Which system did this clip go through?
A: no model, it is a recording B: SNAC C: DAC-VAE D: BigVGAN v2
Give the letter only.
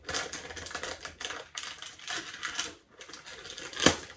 A